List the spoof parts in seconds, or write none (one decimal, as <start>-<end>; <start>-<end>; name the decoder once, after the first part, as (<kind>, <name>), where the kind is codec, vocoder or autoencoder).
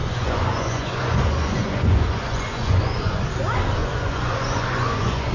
0.0-3.2 (vocoder, Vocos); 3.8-5.3